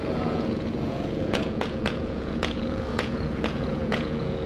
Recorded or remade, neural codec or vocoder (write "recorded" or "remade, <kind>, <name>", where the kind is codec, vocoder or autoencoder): remade, vocoder, Vocos